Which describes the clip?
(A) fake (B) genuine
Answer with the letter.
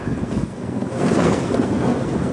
A